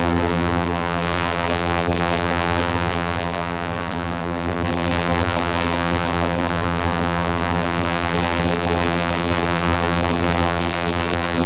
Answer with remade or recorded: remade